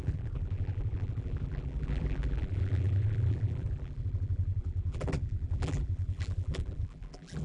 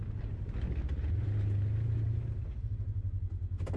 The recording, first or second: second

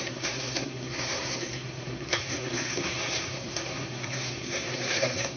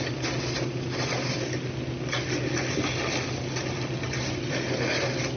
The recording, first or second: second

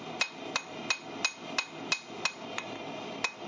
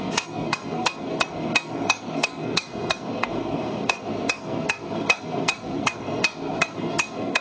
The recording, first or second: first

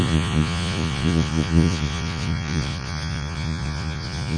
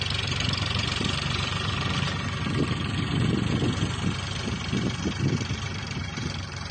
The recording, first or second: second